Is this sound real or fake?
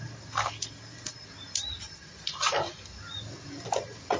real